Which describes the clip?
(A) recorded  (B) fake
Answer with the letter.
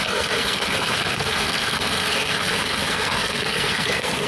B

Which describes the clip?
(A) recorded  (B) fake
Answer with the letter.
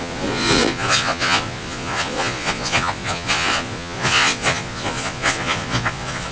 B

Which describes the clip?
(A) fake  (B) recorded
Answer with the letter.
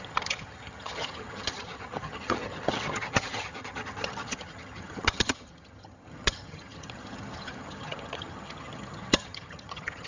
A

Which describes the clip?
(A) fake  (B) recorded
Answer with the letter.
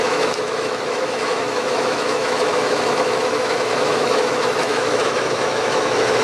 A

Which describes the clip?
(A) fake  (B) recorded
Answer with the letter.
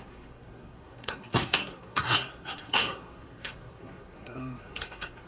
A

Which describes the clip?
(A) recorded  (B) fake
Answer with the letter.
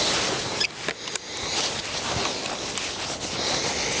A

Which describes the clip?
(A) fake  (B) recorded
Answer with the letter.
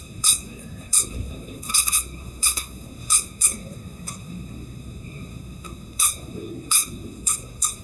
A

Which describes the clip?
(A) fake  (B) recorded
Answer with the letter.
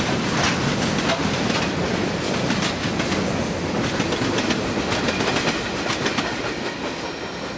B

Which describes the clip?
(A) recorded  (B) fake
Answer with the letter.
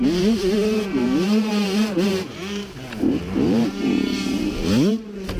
B